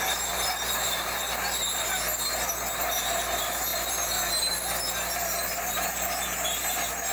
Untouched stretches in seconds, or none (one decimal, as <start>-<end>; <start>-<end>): 0.0-7.1